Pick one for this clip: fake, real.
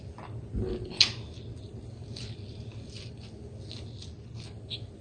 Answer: real